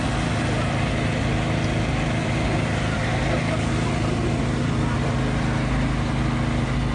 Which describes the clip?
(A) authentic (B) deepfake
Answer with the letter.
A